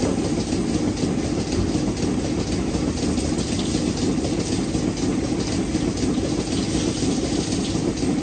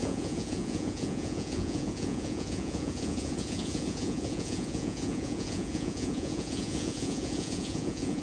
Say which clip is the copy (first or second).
second